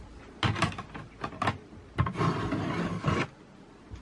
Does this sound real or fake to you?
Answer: real